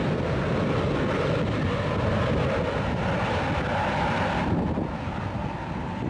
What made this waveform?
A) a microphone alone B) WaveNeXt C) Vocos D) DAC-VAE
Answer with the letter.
A